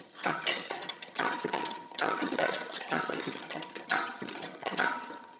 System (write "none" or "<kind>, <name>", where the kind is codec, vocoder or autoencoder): vocoder, HiFi-GAN